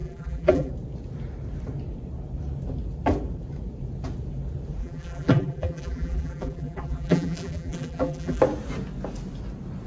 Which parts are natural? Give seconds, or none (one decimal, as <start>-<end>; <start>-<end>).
0.7-4.8; 8.4-9.9